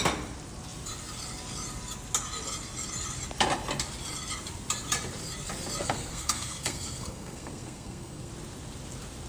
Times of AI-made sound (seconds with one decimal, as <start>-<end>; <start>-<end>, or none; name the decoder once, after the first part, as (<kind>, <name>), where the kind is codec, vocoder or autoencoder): 5.8-8.3 (codec, SNAC)